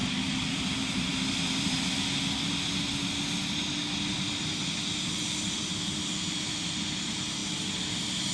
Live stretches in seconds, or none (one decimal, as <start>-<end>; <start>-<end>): 2.5-6.0; 6.8-8.3